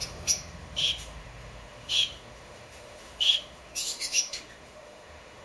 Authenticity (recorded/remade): remade